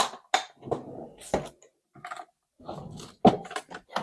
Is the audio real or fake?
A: real